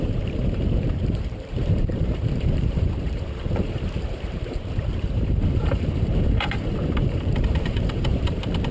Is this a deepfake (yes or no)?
yes